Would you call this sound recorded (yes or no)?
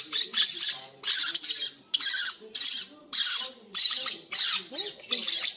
yes